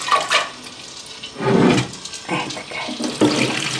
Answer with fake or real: real